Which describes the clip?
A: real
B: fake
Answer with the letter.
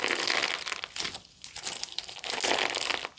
A